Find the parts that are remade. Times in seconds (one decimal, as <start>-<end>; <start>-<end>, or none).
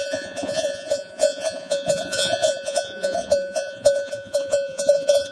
0.0-5.3